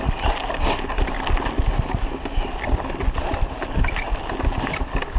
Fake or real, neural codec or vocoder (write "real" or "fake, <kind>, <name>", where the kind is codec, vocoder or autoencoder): real